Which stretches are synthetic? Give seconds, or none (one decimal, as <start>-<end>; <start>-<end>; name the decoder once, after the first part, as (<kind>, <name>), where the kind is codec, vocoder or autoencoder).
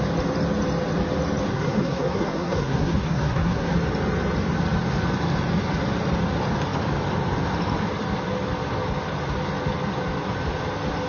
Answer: 1.5-3.7 (codec, SNAC)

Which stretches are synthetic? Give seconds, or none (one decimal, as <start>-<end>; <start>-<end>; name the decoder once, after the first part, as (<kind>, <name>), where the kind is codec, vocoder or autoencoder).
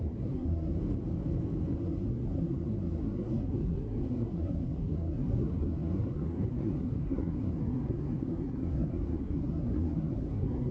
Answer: 0.0-0.8 (codec, SNAC); 1.8-10.7